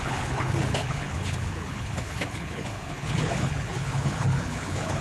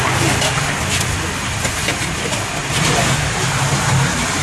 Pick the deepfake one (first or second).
first